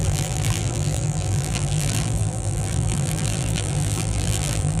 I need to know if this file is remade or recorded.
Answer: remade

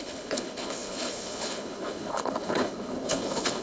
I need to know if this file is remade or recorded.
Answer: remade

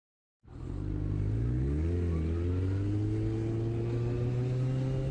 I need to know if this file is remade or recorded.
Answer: recorded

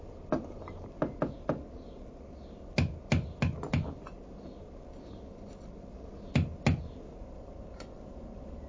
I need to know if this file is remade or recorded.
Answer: recorded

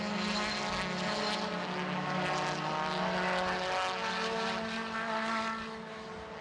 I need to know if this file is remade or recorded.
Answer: recorded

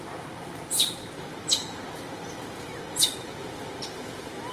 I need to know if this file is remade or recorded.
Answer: remade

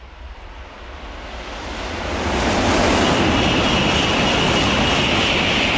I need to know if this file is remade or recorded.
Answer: recorded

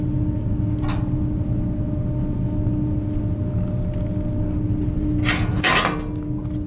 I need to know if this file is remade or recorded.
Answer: recorded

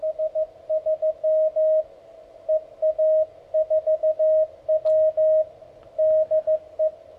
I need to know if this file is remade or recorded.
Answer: recorded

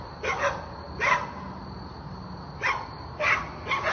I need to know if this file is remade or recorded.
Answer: recorded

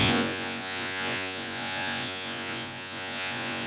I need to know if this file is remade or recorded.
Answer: remade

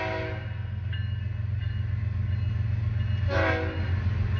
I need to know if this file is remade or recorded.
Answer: recorded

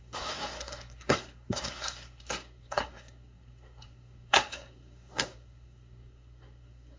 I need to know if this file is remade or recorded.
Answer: remade